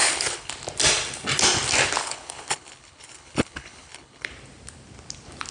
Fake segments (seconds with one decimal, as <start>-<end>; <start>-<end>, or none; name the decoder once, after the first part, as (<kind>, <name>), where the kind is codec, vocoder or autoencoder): 0.0-0.5 (codec, HILCodec); 2.0-4.3

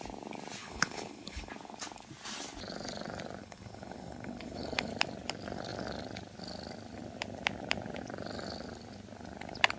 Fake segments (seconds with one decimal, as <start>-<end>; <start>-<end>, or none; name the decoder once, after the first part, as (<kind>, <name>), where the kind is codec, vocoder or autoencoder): 0.6-1.5 (codec, HILCodec); 3.4-4.9

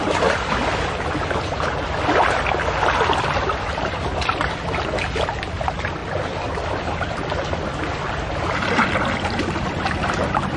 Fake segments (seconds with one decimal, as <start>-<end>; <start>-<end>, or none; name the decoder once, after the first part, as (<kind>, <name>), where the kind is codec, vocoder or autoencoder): none

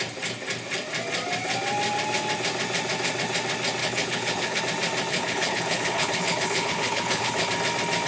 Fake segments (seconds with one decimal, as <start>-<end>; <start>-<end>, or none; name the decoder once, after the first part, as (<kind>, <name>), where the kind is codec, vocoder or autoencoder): 3.8-4.6 (codec, HILCodec); 5.1-7.5

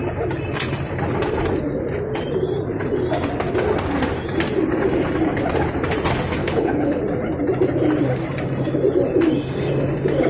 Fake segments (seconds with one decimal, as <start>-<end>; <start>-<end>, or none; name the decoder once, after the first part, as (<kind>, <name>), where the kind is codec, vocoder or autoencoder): 6.4-7.0 (codec, HILCodec)

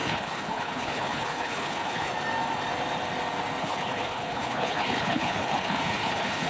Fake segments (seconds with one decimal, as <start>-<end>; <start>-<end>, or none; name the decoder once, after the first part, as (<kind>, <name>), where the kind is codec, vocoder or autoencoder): 0.0-2.1 (codec, HILCodec); 3.6-6.5

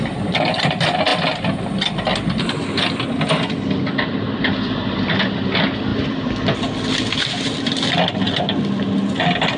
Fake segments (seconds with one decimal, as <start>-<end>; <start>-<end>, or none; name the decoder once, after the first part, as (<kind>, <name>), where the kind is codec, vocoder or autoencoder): none

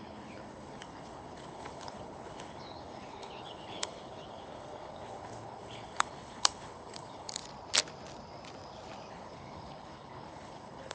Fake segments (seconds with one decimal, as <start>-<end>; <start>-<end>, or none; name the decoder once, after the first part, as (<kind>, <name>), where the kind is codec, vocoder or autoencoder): 0.0-7.4 (codec, HILCodec); 9.1-10.9